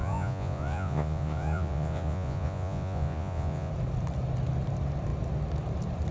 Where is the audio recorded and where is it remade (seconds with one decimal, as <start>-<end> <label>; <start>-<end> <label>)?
0.0-3.7 remade; 3.7-6.1 recorded